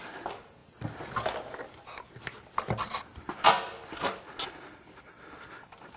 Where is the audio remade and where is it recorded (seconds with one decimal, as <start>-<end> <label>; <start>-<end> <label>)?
0.0-6.0 recorded

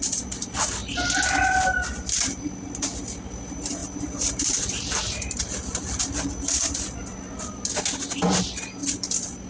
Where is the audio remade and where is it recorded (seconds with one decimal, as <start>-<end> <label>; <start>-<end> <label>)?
0.0-3.8 recorded; 3.8-6.3 remade; 6.3-8.8 recorded; 8.8-9.5 remade

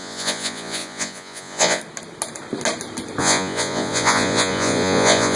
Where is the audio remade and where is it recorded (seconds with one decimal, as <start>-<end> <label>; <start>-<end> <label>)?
0.0-1.8 remade; 1.8-3.2 recorded; 3.2-5.4 remade

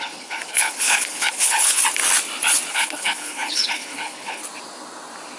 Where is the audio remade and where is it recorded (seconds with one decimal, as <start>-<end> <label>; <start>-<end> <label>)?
0.0-1.8 remade; 1.8-2.7 recorded; 2.7-4.4 remade; 4.4-5.4 recorded

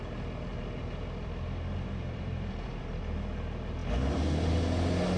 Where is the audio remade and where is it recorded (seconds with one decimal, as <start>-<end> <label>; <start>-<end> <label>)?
0.0-0.5 recorded; 0.5-3.0 remade; 3.0-5.2 recorded

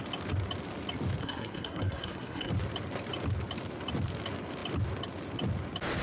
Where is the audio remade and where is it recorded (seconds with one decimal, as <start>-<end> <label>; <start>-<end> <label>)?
0.0-1.2 recorded; 1.2-2.5 remade; 2.5-6.0 recorded

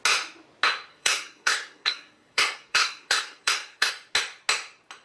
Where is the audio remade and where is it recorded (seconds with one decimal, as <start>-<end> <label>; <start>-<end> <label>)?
0.0-0.9 recorded; 0.9-3.9 remade; 3.9-5.0 recorded

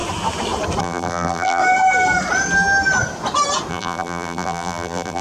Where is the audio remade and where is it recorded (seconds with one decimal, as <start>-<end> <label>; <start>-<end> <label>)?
0.0-0.8 recorded; 0.8-1.6 remade; 1.6-3.7 recorded; 3.7-5.2 remade